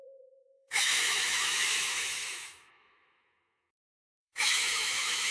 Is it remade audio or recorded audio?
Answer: remade